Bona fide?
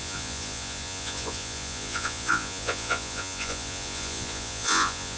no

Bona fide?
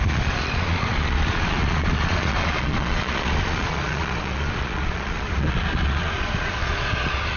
no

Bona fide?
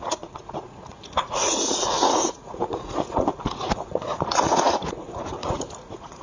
no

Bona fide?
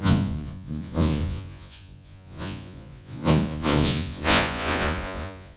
no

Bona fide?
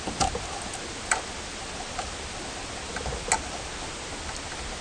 yes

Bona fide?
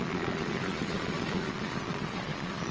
no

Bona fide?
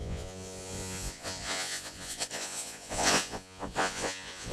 no